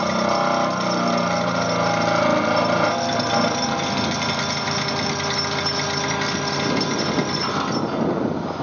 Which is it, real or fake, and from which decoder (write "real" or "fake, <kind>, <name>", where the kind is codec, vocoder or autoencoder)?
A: real